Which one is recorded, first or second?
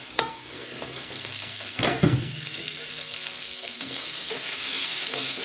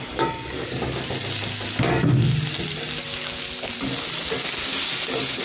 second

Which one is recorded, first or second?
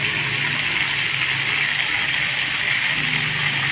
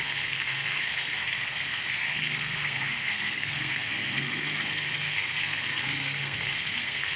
first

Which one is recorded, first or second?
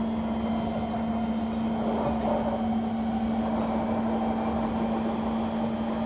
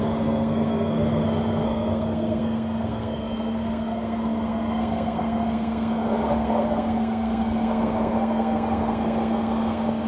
first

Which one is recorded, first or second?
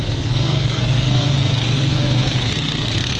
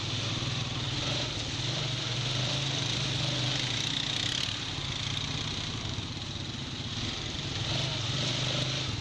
second